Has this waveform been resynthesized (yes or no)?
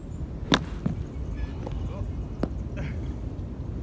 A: no